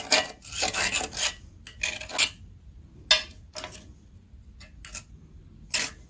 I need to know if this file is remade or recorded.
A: recorded